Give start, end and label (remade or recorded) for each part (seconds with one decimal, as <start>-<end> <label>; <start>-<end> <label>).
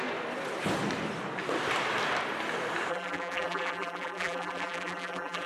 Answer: 0.0-2.9 recorded; 2.9-5.5 remade